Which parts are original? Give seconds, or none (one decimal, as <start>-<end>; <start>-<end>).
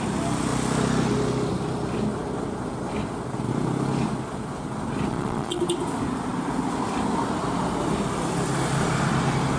0.0-5.1; 5.6-9.6